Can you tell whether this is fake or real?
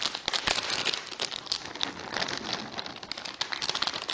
real